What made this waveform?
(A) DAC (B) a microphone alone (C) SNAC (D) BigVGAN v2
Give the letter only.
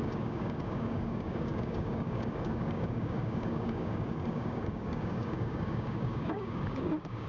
A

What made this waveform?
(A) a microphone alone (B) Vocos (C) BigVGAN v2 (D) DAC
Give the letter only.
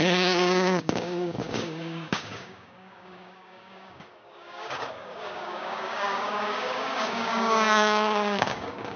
D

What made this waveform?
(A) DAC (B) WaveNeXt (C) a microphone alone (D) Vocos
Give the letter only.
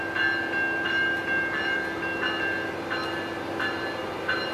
C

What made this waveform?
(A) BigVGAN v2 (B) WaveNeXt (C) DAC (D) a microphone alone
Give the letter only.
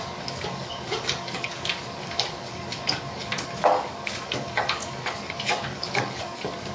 C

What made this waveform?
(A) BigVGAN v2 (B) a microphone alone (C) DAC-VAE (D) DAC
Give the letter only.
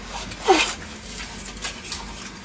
B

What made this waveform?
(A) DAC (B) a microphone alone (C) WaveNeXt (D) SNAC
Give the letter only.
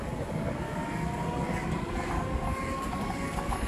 A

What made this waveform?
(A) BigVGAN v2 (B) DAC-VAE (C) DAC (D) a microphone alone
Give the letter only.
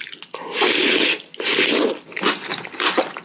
D